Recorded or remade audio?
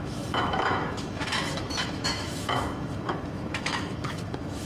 remade